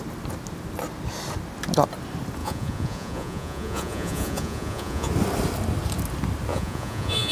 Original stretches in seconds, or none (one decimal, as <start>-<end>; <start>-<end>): 0.0-2.4; 5.1-6.5